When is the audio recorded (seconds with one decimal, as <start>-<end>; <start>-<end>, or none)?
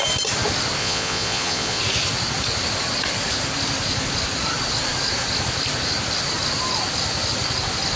0.0-0.8; 1.8-8.0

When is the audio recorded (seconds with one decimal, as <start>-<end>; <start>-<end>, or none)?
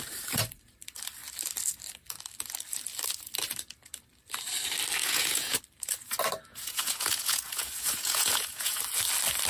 0.0-5.0; 5.6-6.5; 8.8-9.5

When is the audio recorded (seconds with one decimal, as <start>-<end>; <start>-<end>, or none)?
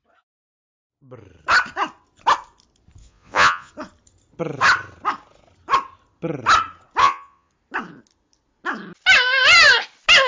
0.0-3.0; 3.7-7.0; 7.5-10.3